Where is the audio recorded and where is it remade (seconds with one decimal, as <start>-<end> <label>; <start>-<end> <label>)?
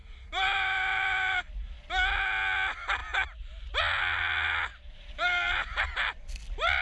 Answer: 0.0-1.4 remade; 1.4-4.7 recorded; 4.7-5.9 remade; 5.9-6.8 recorded